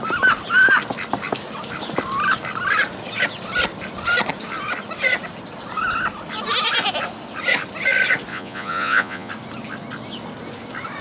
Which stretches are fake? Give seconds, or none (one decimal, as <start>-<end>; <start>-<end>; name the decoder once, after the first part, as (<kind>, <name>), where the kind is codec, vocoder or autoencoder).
8.3-9.3 (vocoder, Vocos)